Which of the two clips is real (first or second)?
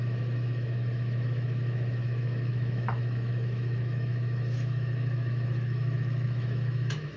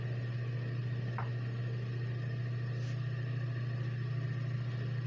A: second